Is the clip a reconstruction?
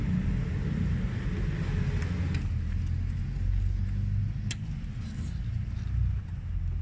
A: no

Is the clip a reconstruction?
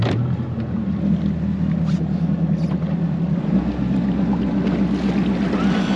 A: no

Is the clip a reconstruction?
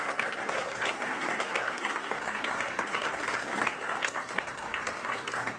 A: yes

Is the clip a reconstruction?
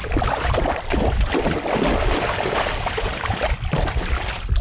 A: no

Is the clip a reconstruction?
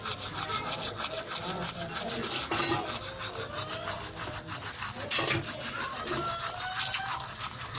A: no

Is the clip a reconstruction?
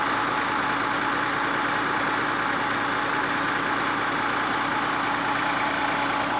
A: no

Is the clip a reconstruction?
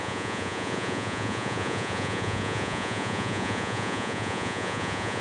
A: yes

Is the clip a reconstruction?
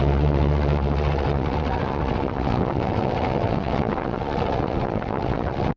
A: yes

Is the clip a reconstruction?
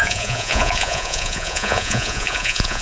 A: yes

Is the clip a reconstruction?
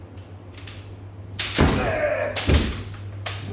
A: no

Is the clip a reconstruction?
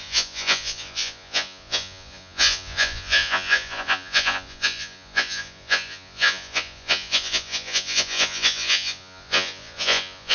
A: yes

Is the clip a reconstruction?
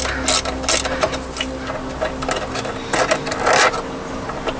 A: no